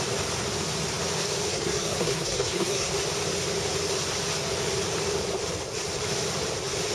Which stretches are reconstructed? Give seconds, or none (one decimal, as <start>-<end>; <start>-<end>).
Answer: 1.5-2.9